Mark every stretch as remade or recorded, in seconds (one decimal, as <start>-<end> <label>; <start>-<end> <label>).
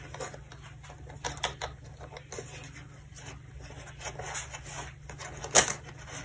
0.0-6.2 recorded